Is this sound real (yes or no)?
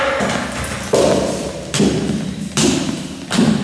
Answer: yes